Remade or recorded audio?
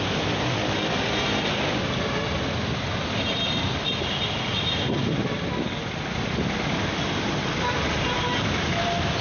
recorded